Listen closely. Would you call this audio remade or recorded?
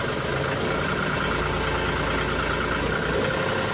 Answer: recorded